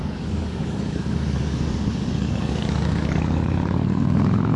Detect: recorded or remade remade